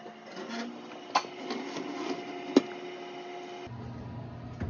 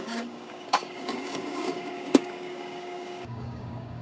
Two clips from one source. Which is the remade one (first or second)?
second